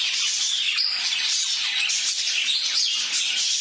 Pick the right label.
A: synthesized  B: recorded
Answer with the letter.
B